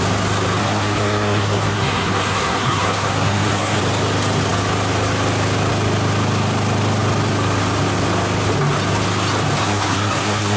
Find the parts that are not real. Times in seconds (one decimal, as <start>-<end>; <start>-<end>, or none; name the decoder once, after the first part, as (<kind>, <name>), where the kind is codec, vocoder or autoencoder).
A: 0.6-3.8 (codec, SNAC); 9.6-10.6